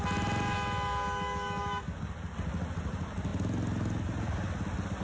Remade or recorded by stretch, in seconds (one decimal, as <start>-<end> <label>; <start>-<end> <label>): 0.0-1.6 recorded; 1.6-2.1 remade; 2.1-5.0 recorded